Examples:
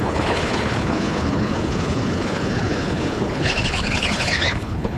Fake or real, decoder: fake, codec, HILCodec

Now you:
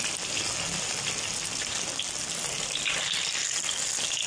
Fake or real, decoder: real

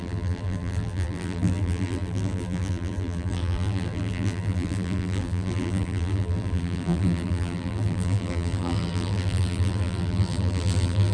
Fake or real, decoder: fake, vocoder, BigVGAN v2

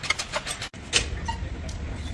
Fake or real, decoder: real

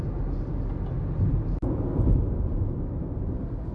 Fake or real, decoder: real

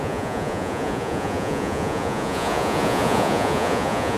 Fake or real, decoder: fake, vocoder, Vocos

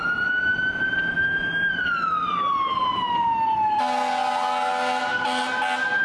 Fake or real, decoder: real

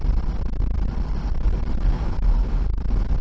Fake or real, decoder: real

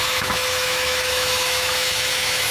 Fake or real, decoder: fake, autoencoder, DAC-VAE